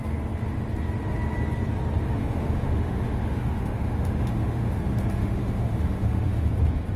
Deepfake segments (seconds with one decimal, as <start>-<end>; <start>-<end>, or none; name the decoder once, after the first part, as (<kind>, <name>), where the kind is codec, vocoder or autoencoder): 2.2-4.8 (autoencoder, DAC-VAE); 5.2-6.5